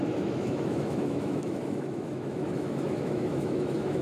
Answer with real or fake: fake